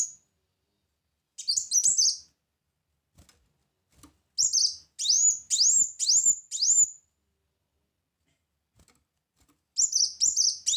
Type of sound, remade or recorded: recorded